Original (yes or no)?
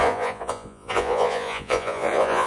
no